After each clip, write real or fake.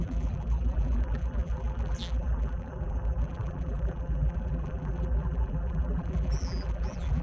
fake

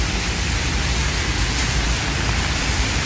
fake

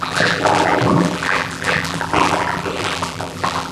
fake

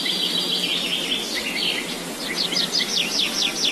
real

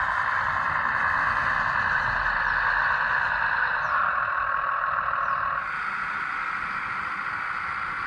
real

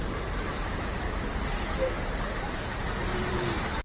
fake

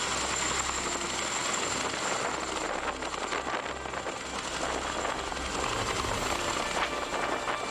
real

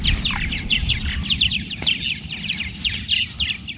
real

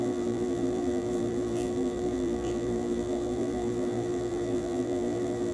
fake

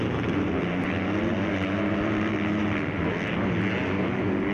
real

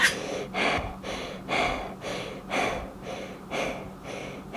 real